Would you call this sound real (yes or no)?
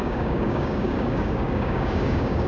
no